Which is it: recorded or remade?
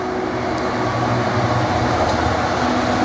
recorded